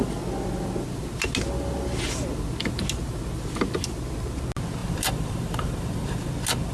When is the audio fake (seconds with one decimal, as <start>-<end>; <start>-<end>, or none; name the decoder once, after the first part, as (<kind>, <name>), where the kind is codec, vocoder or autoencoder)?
4.8-6.3 (vocoder, BigVGAN v2)